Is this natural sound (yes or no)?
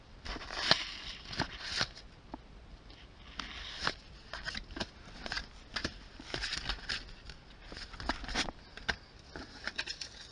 yes